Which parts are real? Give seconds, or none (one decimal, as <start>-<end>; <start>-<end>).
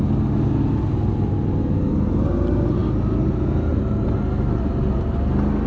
0.0-5.7